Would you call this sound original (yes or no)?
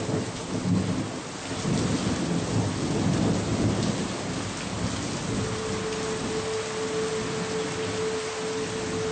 yes